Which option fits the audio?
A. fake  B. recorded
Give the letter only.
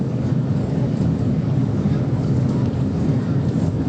A